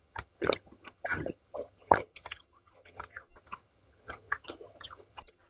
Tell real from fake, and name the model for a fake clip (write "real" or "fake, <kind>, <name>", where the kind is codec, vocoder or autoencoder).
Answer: fake, vocoder, HiFi-GAN